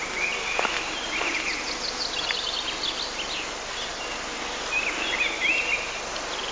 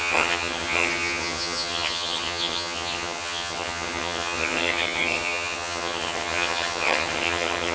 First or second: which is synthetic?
second